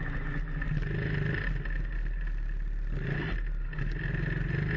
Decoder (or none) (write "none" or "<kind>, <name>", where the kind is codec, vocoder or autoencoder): none